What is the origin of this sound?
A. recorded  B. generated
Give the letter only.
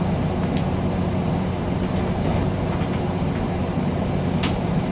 A